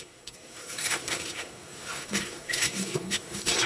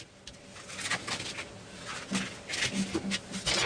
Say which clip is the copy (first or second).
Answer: first